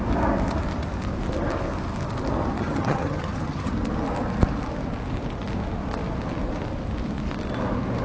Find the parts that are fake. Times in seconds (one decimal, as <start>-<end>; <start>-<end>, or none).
2.6-3.7